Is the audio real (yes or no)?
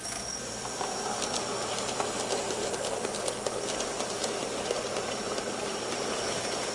no